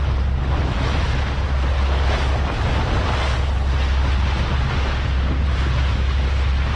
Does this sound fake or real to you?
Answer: real